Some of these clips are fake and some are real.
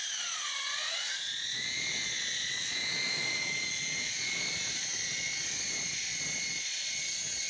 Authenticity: fake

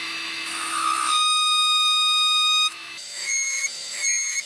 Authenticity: fake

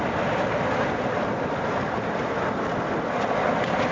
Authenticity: real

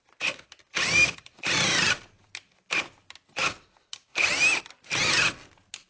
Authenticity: real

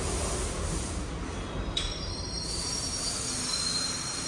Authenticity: real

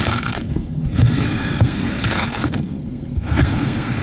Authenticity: fake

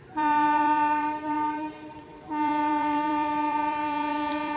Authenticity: fake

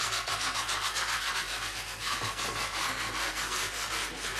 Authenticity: fake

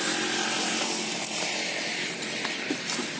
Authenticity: real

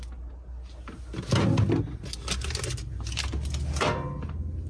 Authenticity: real